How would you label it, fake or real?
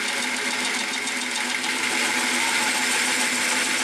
real